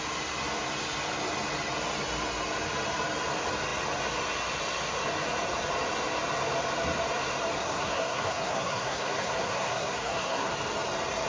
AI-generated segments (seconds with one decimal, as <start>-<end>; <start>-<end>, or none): 7.6-10.5

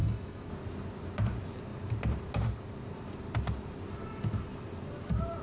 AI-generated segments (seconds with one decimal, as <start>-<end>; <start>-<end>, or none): 0.0-0.5